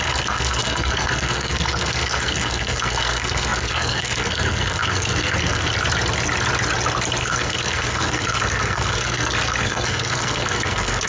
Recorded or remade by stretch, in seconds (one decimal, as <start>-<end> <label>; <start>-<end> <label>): 0.0-5.7 remade; 5.7-7.2 recorded; 7.2-11.1 remade